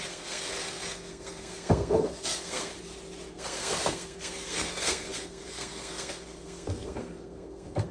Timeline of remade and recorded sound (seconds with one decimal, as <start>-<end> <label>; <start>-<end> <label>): 0.0-2.7 remade; 2.7-3.3 recorded; 3.3-7.9 remade